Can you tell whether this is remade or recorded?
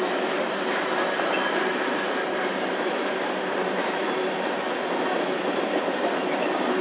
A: recorded